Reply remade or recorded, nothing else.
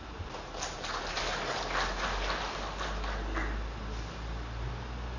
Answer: recorded